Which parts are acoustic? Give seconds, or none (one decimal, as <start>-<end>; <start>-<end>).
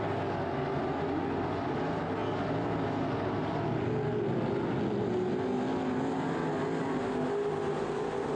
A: 0.0-8.4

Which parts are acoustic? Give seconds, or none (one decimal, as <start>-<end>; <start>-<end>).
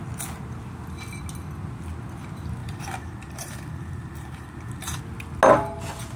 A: 0.0-2.6; 5.0-6.2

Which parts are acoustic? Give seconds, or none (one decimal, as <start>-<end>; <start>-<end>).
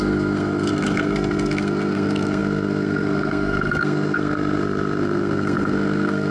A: none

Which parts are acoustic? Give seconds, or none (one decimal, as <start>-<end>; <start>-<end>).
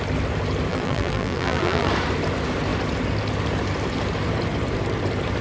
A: 0.0-0.7; 1.9-5.4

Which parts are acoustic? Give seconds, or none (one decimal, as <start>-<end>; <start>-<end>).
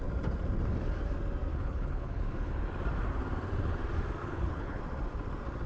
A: 0.0-1.5; 2.5-4.2; 4.8-5.7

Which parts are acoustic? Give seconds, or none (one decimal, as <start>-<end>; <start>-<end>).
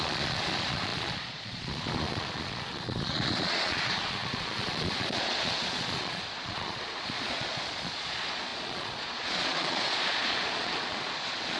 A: none